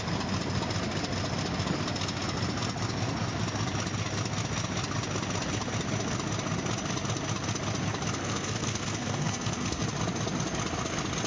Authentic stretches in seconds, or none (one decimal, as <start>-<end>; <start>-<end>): 0.0-8.2; 9.8-11.3